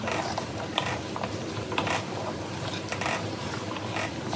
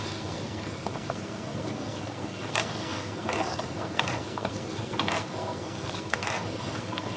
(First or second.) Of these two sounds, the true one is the first